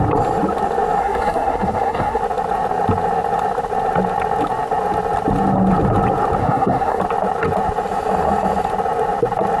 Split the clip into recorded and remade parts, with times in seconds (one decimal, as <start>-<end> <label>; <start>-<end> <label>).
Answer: 0.0-1.0 recorded; 1.0-2.2 remade; 2.2-6.4 recorded; 6.4-7.0 remade; 7.0-9.6 recorded